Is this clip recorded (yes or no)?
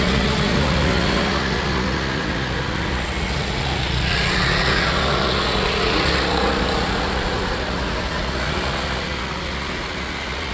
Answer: no